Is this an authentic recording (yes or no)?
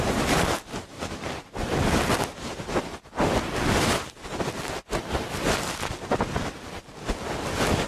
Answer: yes